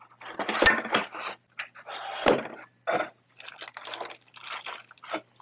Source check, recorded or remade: recorded